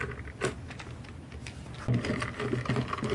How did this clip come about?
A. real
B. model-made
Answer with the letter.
A